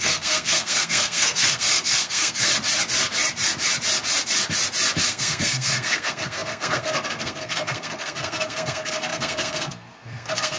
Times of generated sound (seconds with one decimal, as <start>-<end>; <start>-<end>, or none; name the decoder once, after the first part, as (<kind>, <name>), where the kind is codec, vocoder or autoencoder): 0.0-2.5 (codec, SNAC); 5.0-10.6

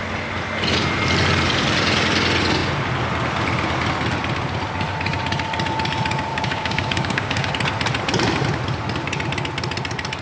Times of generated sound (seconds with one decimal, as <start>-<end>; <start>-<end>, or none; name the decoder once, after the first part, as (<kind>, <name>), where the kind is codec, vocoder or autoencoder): 6.3-7.5 (codec, DAC)

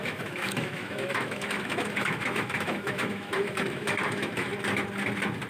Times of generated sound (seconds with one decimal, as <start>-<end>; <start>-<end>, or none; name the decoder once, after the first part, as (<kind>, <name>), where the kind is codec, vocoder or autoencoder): 0.0-4.5 (autoencoder, DAC-VAE)